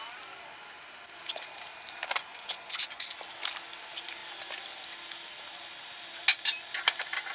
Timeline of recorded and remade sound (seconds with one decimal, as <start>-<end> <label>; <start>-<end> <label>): 0.0-2.2 recorded; 2.2-2.9 remade; 2.9-7.3 recorded